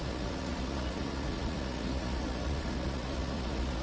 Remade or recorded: remade